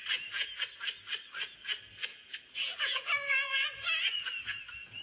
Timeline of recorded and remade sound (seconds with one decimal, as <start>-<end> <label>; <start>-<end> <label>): 0.0-0.6 remade; 0.6-2.1 recorded; 2.1-5.0 remade